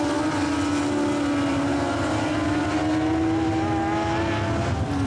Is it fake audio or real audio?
real